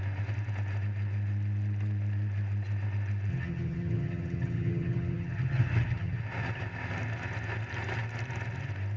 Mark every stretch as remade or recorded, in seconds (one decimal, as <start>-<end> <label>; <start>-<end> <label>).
0.0-3.3 recorded; 3.3-6.2 remade; 6.2-9.0 recorded

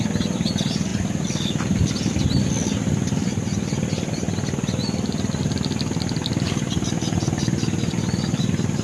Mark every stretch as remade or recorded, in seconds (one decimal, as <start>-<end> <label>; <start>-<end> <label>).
0.0-8.8 recorded

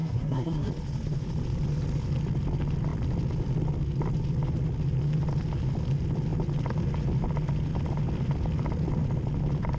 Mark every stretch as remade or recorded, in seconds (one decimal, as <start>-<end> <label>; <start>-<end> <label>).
0.0-0.7 remade; 0.7-9.8 recorded

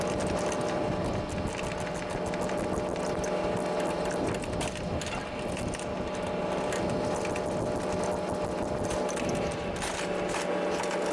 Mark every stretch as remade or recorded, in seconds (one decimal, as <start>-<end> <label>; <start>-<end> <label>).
0.0-11.1 recorded

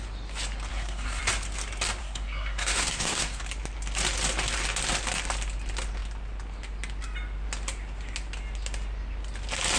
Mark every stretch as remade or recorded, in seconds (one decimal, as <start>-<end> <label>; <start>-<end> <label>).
0.0-0.7 recorded; 0.7-1.2 remade; 1.2-2.0 recorded; 2.0-3.4 remade; 3.4-9.8 recorded

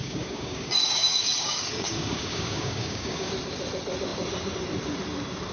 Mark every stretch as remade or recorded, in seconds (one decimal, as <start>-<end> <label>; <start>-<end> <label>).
0.0-3.3 remade; 3.3-5.5 recorded